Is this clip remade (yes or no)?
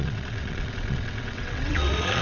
yes